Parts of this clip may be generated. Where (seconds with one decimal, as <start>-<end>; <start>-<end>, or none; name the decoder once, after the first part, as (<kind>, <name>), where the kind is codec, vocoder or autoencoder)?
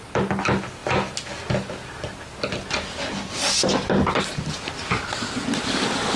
none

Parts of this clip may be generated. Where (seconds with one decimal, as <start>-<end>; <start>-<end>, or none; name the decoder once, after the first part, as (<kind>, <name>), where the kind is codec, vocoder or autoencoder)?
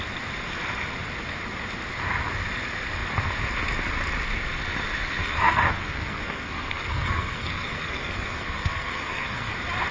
5.2-9.5 (codec, SNAC)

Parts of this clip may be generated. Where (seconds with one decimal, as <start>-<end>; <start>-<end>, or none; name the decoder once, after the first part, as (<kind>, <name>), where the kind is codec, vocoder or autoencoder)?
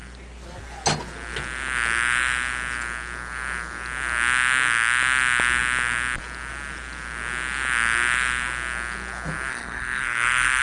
9.5-10.6 (codec, SNAC)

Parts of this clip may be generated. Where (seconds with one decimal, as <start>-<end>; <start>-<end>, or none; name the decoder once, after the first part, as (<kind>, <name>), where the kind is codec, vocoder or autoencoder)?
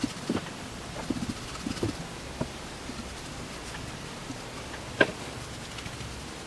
none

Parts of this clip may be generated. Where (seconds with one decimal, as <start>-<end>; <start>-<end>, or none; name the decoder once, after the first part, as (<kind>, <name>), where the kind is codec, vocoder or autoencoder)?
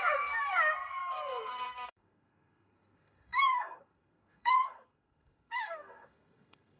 0.0-6.8 (codec, SNAC)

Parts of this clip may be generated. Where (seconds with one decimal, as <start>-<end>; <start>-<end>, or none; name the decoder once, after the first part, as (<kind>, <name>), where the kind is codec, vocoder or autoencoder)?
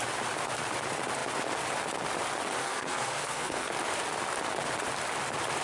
2.6-3.7 (codec, SNAC)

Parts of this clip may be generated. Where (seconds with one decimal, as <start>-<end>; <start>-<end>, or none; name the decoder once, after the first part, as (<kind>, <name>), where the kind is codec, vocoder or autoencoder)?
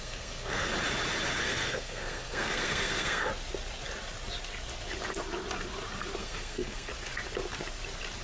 0.0-0.7 (codec, SNAC); 1.4-3.3; 6.2-6.9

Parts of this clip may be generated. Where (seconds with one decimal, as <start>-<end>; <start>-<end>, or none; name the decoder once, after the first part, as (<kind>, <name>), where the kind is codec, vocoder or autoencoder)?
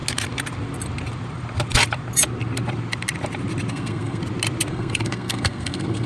3.7-4.2 (codec, SNAC); 4.7-6.1